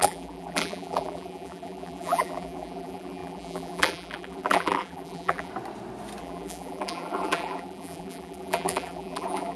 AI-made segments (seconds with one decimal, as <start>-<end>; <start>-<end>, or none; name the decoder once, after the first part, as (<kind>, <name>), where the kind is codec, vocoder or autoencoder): 0.0-5.5 (vocoder, BigVGAN v2); 6.2-9.6